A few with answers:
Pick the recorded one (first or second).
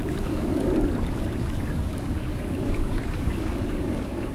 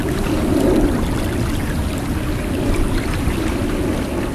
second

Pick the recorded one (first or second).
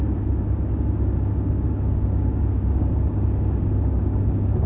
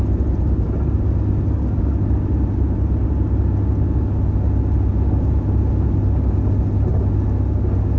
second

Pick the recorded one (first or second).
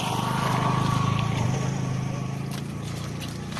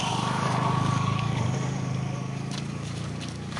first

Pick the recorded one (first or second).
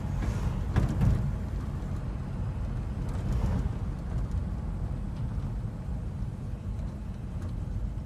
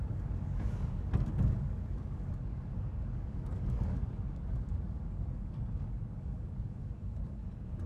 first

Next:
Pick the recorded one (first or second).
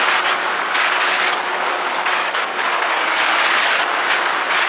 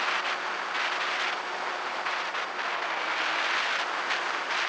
second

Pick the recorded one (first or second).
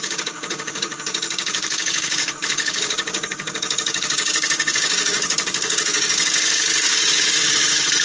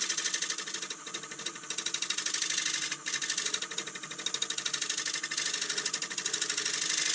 second